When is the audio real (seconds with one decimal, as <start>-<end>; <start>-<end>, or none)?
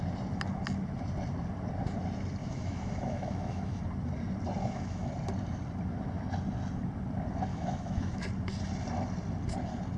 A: 0.0-2.4; 3.8-4.6; 5.1-7.5; 8.2-10.0